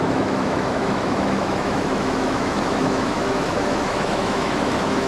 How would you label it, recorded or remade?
remade